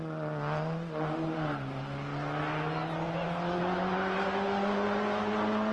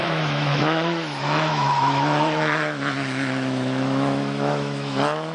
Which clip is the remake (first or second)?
second